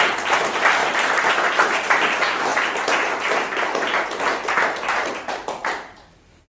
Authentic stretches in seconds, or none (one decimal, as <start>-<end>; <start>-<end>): 0.0-6.6